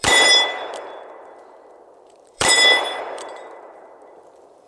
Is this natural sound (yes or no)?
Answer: no